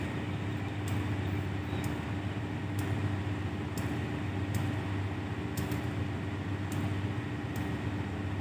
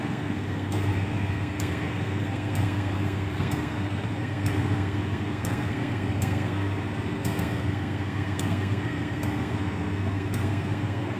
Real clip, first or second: first